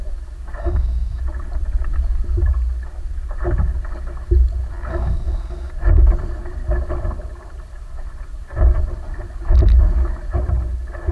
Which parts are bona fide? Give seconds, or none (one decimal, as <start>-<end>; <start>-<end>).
0.0-0.6; 1.2-4.9; 5.7-11.1